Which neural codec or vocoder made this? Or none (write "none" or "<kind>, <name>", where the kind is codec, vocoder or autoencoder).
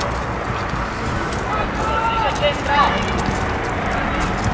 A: none